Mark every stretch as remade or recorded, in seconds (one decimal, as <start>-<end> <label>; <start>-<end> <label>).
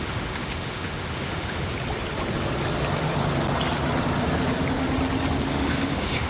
0.0-1.7 remade; 1.7-5.5 recorded; 5.5-6.3 remade